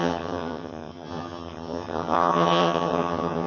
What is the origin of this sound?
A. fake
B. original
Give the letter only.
A